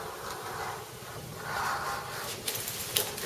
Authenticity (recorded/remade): remade